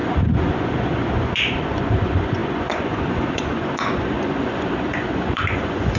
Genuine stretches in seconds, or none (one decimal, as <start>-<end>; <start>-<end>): none

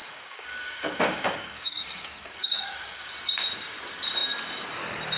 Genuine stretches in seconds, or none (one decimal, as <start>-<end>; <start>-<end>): 3.1-5.2

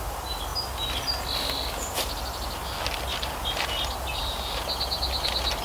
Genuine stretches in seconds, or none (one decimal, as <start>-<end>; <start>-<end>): 0.0-5.6

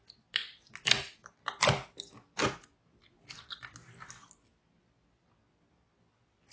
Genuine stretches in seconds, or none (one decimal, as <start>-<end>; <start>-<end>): 0.0-6.5

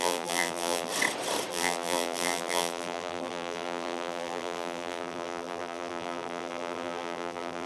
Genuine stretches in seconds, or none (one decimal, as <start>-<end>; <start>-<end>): 0.9-1.5

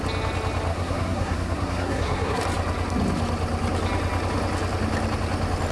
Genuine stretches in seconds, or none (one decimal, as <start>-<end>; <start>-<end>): 0.0-0.7; 2.4-5.7

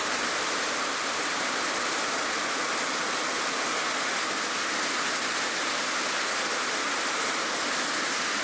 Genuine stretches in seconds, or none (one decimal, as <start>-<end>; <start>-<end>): 2.2-8.4

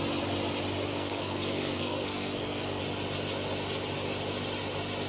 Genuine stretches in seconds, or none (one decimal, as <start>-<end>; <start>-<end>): 0.0-0.9; 2.8-5.1